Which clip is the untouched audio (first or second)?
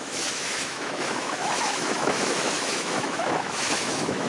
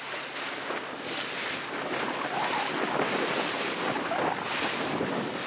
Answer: second